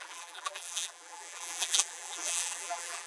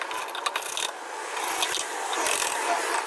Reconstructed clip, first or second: first